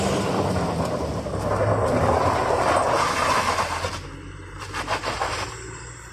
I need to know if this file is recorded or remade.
recorded